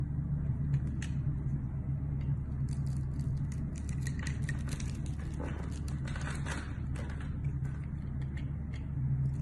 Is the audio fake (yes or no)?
no